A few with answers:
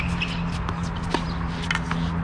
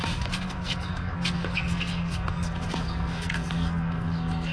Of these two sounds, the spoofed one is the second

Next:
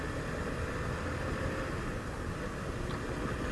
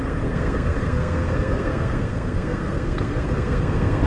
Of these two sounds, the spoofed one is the second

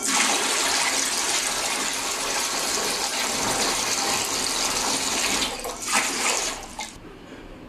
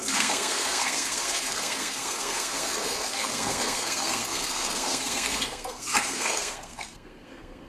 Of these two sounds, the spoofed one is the second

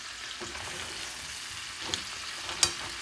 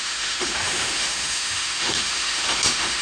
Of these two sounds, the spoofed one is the second